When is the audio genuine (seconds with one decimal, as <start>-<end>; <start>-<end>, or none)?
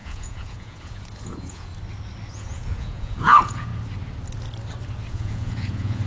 1.7-2.3; 3.7-5.1